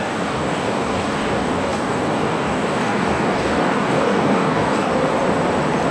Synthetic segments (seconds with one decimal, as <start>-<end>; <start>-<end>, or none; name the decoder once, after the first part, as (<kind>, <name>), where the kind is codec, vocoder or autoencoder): 0.0-4.9 (codec, DAC)